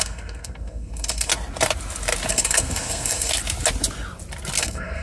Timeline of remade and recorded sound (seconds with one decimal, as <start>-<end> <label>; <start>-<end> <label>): 0.0-1.3 remade; 1.3-2.3 recorded; 2.3-3.3 remade; 3.3-4.6 recorded; 4.6-5.0 remade